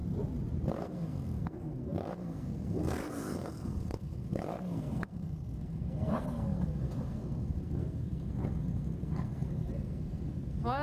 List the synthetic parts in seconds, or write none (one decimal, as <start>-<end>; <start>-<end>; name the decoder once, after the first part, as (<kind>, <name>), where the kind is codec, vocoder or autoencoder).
0.7-10.8 (codec, SNAC)